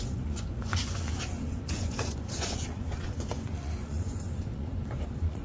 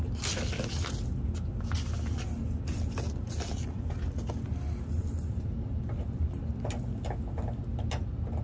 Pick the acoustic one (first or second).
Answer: second